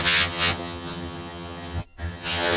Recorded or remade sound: remade